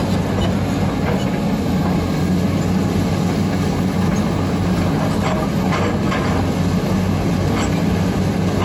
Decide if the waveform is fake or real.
real